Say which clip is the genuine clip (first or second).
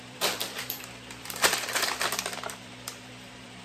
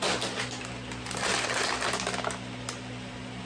second